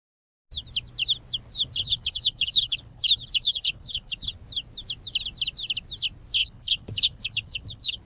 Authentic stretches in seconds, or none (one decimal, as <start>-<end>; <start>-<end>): 0.0-1.7; 4.3-6.4